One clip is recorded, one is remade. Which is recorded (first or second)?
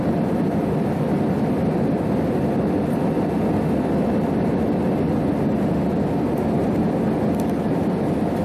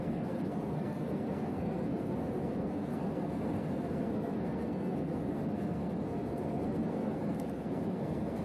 first